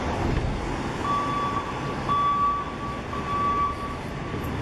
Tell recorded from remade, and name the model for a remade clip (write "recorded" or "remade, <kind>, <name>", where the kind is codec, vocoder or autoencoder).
recorded